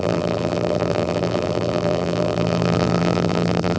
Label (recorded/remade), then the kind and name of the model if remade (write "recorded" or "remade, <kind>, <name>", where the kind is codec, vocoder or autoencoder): remade, vocoder, BigVGAN v2